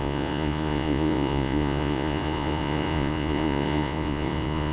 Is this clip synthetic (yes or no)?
yes